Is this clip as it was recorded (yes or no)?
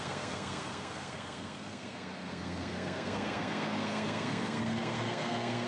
no